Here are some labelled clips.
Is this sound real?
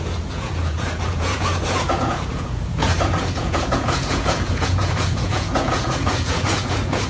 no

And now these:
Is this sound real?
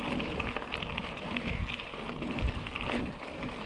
yes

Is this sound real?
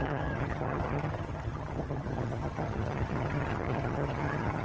no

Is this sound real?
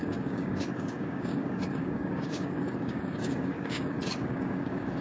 no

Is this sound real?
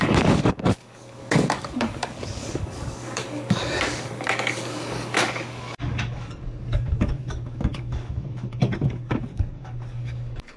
no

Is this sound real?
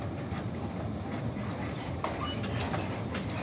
no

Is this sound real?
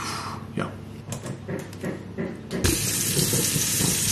yes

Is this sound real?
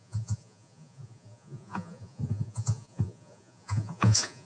no